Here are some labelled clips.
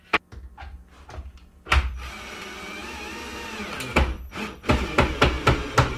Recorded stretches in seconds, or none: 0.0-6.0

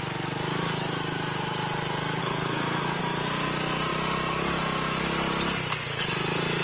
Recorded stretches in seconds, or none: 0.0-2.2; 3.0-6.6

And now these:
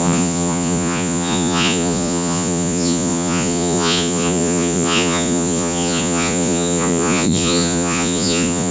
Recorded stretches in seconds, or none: none

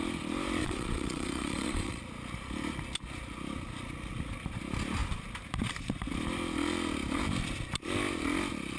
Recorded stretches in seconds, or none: 0.0-0.6; 2.0-8.8